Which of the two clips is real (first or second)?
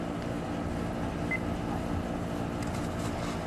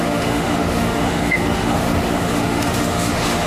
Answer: first